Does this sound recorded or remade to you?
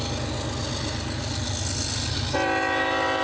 recorded